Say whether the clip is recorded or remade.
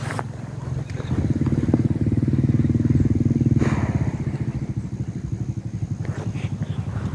recorded